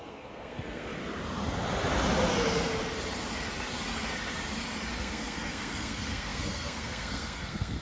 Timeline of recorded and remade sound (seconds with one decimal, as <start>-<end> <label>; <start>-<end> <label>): 0.0-1.0 remade; 1.0-4.9 recorded; 4.9-7.8 remade